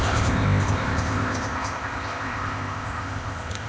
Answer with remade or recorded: remade